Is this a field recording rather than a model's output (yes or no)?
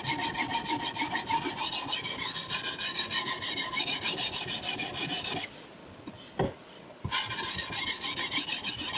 yes